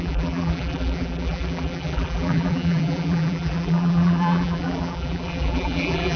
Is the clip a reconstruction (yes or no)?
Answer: yes